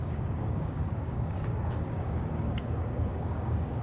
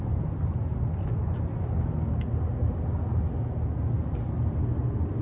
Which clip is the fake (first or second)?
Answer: first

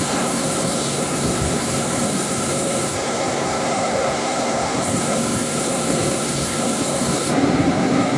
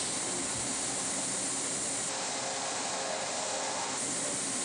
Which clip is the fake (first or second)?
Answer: first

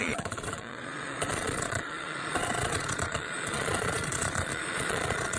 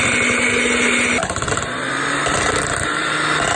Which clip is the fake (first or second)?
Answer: first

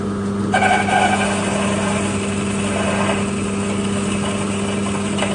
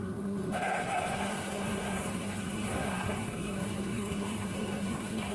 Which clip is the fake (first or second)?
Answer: second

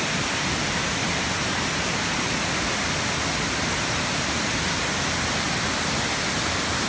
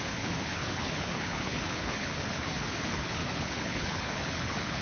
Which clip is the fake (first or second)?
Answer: second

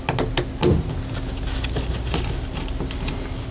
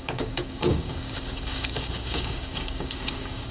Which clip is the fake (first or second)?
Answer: second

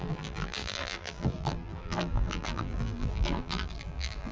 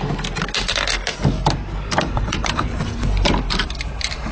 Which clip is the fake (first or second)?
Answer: first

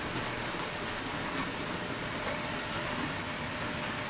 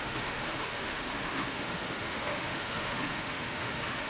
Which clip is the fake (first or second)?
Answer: second